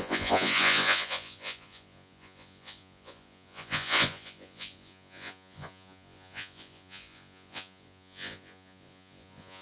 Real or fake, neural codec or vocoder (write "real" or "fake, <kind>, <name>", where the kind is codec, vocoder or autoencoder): fake, vocoder, Vocos